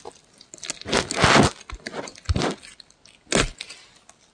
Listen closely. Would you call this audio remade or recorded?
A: recorded